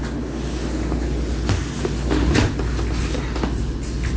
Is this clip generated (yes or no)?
no